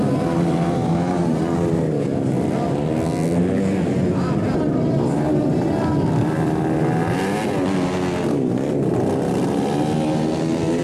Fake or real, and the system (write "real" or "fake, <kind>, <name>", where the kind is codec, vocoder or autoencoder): real